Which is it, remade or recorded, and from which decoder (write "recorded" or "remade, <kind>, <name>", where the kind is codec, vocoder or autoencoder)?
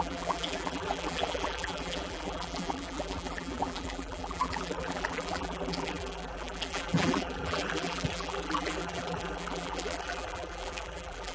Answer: remade, vocoder, BigVGAN v2